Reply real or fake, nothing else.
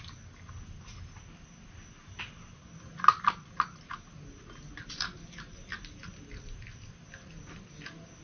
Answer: real